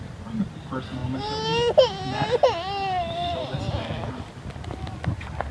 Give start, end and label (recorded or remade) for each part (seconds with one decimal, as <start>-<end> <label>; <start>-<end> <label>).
0.0-5.5 recorded